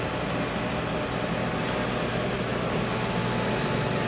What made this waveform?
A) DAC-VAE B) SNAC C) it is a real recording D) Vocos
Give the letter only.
C